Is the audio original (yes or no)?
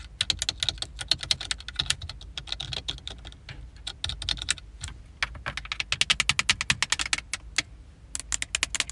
yes